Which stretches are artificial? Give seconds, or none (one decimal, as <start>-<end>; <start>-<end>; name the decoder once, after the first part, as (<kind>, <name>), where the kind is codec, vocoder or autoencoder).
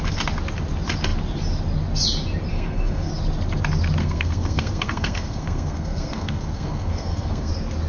2.5-3.1 (codec, SNAC); 4.0-7.5